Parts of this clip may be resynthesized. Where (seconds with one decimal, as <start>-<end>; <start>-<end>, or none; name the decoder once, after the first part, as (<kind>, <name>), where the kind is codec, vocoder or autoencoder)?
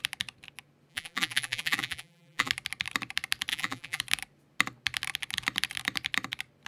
0.9-2.5 (vocoder, BigVGAN v2); 3.5-4.0